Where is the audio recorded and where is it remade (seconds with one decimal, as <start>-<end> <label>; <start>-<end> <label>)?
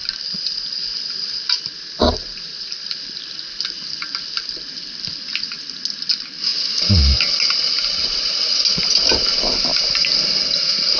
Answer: 0.0-1.3 remade; 1.3-11.0 recorded